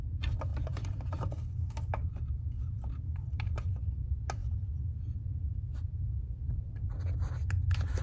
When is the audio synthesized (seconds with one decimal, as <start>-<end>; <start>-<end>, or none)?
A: 0.5-4.0; 4.4-6.9

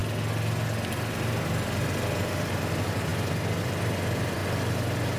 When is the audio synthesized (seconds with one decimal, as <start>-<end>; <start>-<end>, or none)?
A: 2.3-3.1; 3.6-4.4

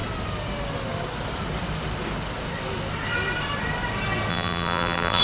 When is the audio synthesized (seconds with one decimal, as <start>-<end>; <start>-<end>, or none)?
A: 4.3-5.2

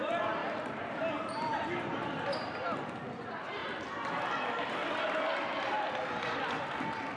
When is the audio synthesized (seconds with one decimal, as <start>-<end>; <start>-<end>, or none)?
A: 0.4-1.1; 1.5-3.0

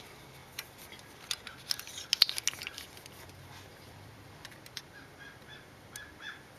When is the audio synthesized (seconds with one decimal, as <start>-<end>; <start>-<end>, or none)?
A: 3.7-4.8

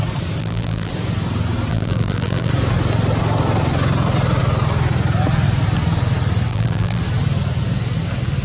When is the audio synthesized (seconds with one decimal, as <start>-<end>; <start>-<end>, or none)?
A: 0.4-0.9; 1.7-2.5; 6.5-7.0